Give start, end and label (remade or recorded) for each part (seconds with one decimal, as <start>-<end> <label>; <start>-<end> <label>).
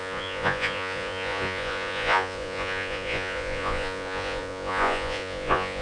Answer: 0.0-5.8 remade